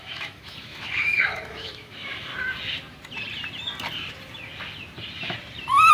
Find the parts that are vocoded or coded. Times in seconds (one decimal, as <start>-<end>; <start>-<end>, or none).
0.0-2.3